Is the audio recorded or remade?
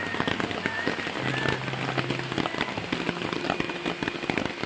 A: recorded